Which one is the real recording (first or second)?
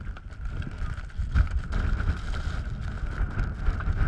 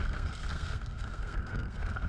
first